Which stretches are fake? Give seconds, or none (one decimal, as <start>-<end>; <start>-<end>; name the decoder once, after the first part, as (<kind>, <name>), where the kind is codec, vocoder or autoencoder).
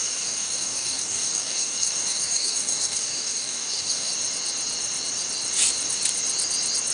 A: 0.0-4.1 (codec, DAC)